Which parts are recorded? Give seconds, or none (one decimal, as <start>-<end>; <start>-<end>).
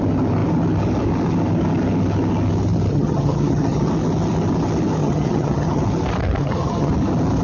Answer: 0.0-2.9; 3.9-5.0; 5.8-6.4; 6.9-7.4